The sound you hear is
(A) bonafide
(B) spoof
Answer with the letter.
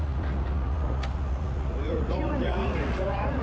B